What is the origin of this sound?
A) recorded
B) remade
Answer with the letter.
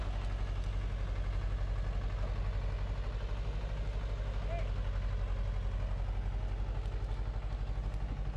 A